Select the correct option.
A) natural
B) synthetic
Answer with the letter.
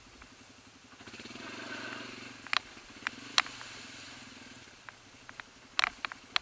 A